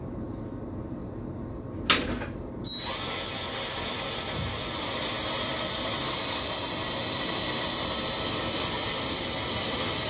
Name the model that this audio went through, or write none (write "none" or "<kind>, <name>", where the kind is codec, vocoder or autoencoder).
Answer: none